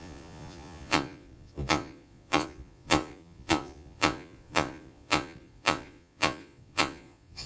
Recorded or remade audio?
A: remade